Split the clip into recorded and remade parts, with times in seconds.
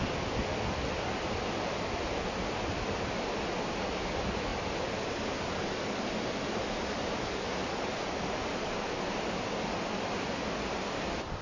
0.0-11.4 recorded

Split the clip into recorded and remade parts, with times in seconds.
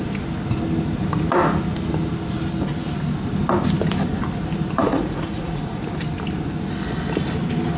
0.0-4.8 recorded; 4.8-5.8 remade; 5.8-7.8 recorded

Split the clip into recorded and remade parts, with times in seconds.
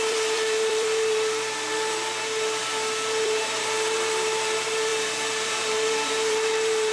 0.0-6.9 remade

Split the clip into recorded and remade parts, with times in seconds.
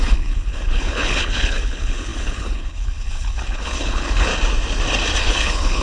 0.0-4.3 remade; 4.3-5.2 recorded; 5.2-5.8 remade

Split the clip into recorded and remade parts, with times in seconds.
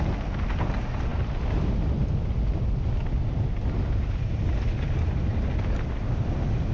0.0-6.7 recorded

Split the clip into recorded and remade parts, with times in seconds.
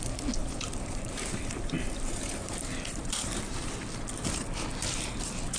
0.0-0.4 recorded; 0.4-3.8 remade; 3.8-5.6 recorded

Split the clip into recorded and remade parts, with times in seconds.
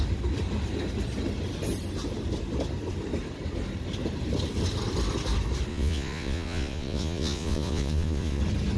0.0-5.7 recorded; 5.7-8.4 remade; 8.4-8.8 recorded